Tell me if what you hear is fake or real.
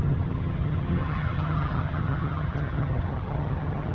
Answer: fake